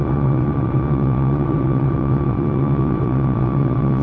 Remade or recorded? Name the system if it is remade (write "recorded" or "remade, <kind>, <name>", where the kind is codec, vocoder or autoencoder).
remade, vocoder, WaveNeXt